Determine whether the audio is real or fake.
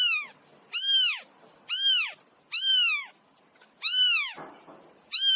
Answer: real